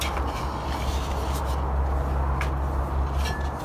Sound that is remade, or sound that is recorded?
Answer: recorded